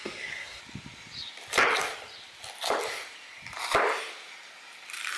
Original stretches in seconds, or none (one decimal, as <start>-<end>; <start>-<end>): 0.6-5.2